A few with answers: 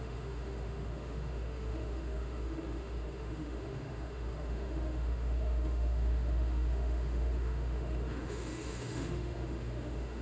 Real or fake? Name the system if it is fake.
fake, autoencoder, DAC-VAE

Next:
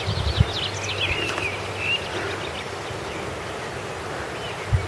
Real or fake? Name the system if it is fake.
real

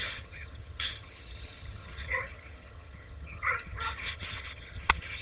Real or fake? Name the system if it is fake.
fake, vocoder, HiFi-GAN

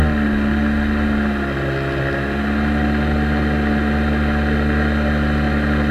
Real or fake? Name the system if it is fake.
real